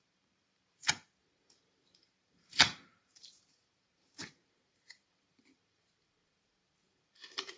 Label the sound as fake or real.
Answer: fake